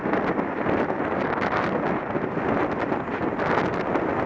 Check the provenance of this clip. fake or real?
real